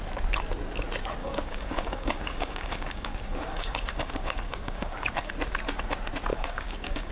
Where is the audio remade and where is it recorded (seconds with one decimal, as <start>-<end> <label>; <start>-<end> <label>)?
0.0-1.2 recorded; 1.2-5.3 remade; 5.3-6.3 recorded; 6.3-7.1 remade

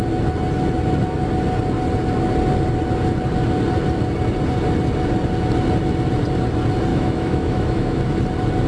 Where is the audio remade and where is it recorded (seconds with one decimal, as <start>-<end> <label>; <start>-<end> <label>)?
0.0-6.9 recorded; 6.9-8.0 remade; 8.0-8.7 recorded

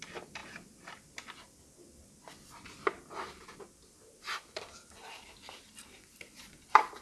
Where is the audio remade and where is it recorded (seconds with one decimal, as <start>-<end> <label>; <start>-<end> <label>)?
0.0-0.4 remade; 0.4-4.2 recorded; 4.2-7.0 remade

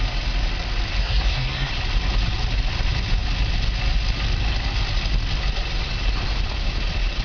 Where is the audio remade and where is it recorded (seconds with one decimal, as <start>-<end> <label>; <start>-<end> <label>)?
0.0-1.0 recorded; 1.0-1.7 remade; 1.7-7.2 recorded